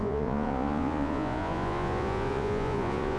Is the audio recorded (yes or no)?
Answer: no